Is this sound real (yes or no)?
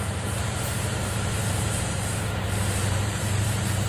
no